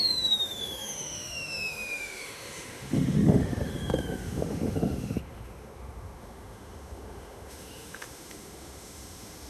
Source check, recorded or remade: remade